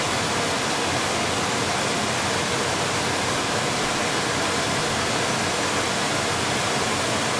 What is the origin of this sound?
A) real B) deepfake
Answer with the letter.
A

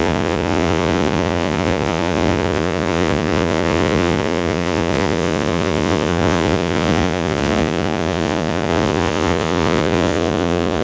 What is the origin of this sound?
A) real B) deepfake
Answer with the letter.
B